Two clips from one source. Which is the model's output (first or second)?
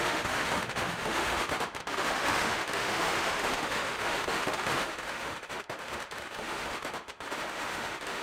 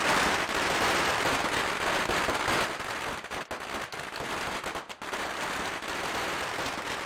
first